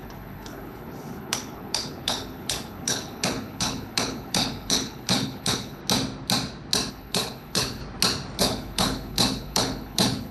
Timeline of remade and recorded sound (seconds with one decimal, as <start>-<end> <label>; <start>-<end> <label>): 0.0-5.8 remade; 5.8-6.9 recorded; 6.9-7.8 remade; 7.8-8.4 recorded; 8.4-10.3 remade

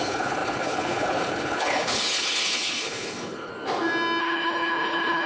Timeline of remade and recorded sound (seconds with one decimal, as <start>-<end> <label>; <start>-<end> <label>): 0.0-3.5 remade; 3.5-4.2 recorded; 4.2-5.3 remade

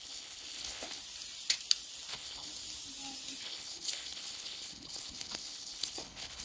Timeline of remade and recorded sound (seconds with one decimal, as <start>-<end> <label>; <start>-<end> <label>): 0.0-1.0 remade; 1.0-2.1 recorded; 2.1-2.5 remade; 2.5-3.4 recorded; 3.4-6.4 remade

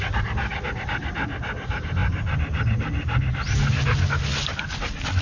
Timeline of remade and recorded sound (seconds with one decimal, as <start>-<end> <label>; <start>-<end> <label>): 0.0-5.2 recorded

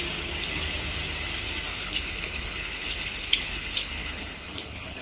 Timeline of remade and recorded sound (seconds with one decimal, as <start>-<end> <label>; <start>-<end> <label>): 0.0-1.7 recorded; 1.7-5.0 remade

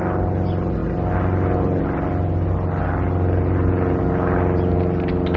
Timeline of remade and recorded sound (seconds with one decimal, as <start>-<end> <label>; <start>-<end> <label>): 0.0-5.4 recorded